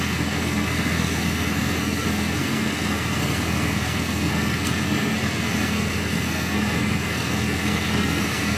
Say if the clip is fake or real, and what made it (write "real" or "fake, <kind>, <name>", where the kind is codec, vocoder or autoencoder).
fake, codec, SNAC